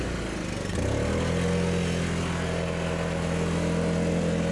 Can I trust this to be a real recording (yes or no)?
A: yes